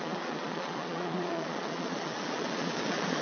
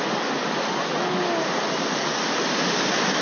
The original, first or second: second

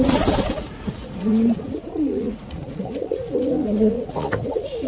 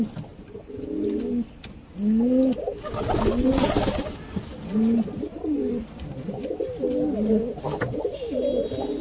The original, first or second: second